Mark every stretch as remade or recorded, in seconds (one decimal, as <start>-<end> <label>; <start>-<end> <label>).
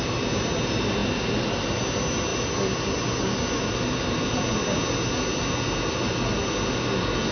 0.0-7.3 recorded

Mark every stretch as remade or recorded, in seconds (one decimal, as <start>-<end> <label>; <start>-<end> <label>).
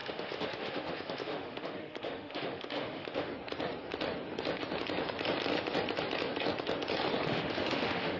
0.0-3.3 remade; 3.3-7.3 recorded; 7.3-8.2 remade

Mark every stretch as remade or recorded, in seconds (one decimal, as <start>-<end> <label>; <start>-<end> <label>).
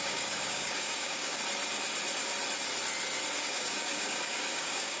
0.0-1.4 remade; 1.4-3.4 recorded; 3.4-5.0 remade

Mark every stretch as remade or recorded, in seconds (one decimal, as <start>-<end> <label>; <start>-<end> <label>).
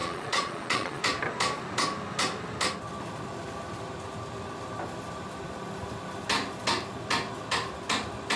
0.0-1.0 remade; 1.0-8.4 recorded